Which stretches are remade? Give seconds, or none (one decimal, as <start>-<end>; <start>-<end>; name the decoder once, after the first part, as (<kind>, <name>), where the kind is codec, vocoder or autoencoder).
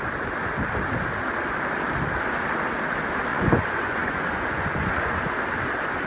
3.3-5.2 (vocoder, Vocos)